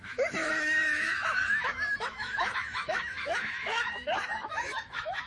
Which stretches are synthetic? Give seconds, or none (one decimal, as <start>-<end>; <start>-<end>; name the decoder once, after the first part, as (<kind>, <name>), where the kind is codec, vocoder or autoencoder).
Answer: 0.0-5.3 (autoencoder, DAC-VAE)